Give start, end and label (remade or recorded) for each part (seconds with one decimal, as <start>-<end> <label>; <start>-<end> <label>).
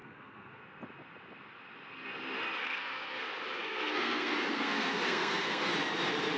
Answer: 0.0-0.6 remade; 0.6-2.6 recorded; 2.6-3.2 remade; 3.2-3.6 recorded; 3.6-5.7 remade; 5.7-6.4 recorded